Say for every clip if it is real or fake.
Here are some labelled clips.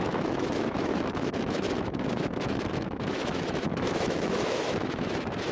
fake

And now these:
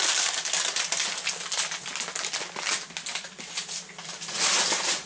real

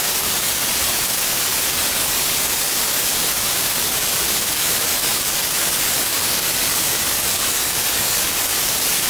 fake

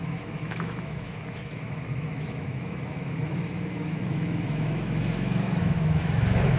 fake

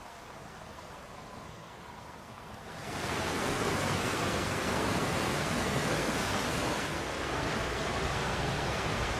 fake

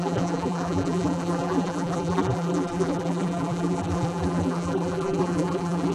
fake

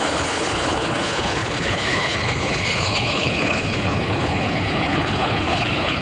fake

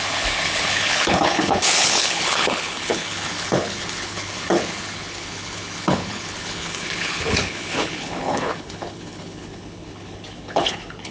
fake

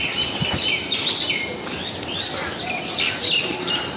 real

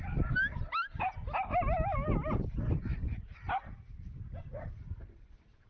real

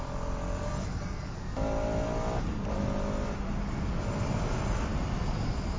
real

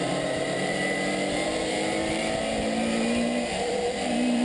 fake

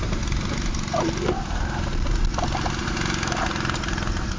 real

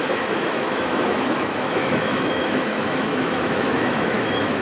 fake